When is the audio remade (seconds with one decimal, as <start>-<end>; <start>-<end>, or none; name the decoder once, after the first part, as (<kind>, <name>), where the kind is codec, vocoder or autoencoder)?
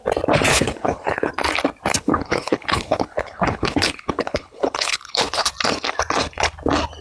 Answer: 0.5-1.3 (codec, HILCodec); 2.0-5.5